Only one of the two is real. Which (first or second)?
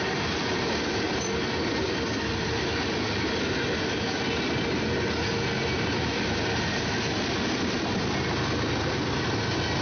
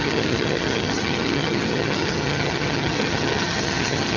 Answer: first